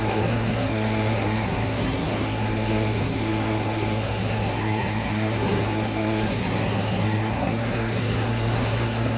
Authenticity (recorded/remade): remade